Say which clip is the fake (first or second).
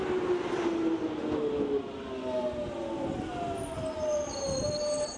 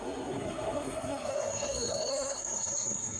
second